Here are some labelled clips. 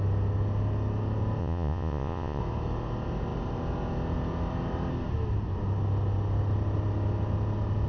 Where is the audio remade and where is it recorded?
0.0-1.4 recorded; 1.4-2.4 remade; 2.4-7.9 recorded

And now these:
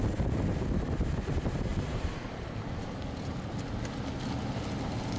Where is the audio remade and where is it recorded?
0.0-5.2 recorded

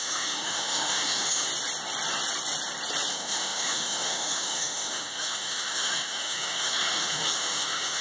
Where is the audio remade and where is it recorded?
0.0-1.5 remade; 1.5-3.1 recorded; 3.1-8.0 remade

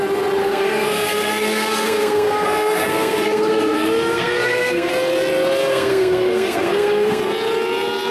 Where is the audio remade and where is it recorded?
0.0-0.4 recorded; 0.4-4.9 remade; 4.9-5.7 recorded; 5.7-7.2 remade; 7.2-8.1 recorded

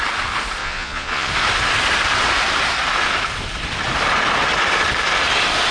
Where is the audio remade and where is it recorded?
0.0-0.6 recorded; 0.6-1.3 remade; 1.3-5.7 recorded

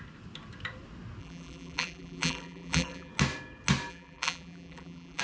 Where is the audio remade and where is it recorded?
0.0-1.2 recorded; 1.2-3.1 remade; 3.1-3.9 recorded; 3.9-5.2 remade